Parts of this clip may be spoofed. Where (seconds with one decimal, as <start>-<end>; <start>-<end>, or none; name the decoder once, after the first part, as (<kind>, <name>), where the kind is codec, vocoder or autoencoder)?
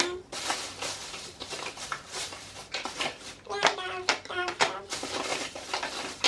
1.0-4.8 (vocoder, BigVGAN v2); 5.3-6.3